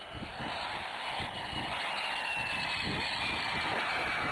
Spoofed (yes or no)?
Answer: no